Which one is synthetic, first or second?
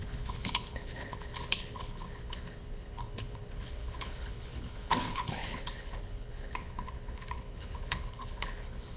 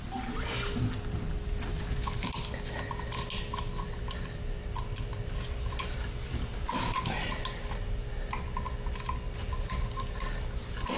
first